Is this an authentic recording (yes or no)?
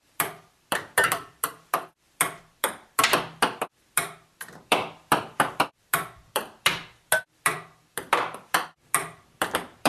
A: no